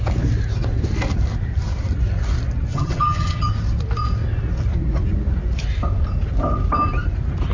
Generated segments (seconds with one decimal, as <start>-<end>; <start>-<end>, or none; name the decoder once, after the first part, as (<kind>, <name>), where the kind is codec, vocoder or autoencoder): 2.7-3.5 (vocoder, HiFi-GAN)